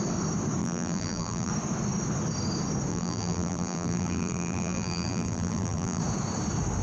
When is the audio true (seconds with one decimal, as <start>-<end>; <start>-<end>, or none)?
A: 0.0-0.6; 1.5-2.9; 6.0-6.8